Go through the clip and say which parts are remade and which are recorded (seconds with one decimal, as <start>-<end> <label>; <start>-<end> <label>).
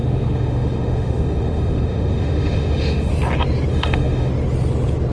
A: 0.0-3.1 remade; 3.1-3.7 recorded; 3.7-4.3 remade; 4.3-5.1 recorded